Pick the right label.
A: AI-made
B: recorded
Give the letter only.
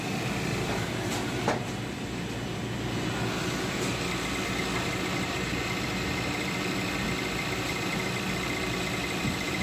B